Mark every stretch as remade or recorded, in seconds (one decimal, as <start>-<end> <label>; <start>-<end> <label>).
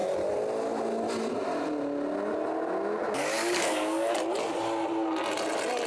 0.0-3.4 recorded; 3.4-4.1 remade; 4.1-5.9 recorded